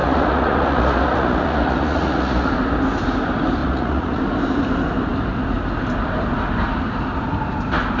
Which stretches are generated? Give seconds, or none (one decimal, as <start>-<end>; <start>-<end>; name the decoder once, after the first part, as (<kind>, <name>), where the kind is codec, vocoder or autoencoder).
0.0-2.5 (vocoder, Vocos); 3.6-4.2